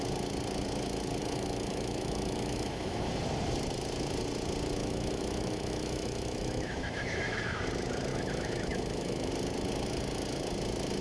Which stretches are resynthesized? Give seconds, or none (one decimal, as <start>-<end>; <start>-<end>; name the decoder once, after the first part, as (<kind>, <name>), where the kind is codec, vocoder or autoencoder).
1.2-3.1 (autoencoder, DAC-VAE); 4.8-7.6; 8.1-9.3